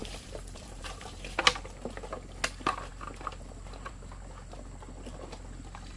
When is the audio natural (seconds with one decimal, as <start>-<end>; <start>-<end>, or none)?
1.4-6.0